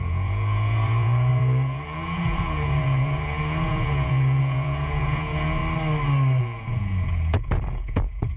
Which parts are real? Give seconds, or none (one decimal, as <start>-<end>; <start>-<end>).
5.6-6.4